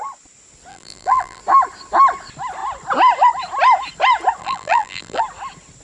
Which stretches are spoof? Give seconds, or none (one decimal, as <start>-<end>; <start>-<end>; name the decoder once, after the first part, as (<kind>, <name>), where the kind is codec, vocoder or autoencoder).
0.7-1.4 (vocoder, BigVGAN v2); 4.4-5.2